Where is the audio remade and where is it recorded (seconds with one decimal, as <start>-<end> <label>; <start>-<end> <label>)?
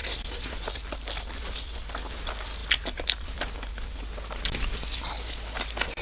0.0-6.0 recorded